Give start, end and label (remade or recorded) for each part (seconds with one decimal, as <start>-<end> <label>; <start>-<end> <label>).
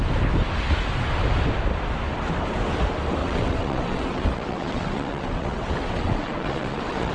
0.0-3.2 recorded; 3.2-7.1 remade